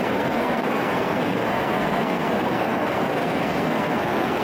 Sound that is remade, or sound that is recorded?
remade